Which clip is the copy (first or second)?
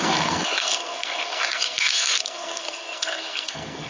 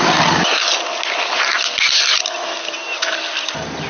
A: first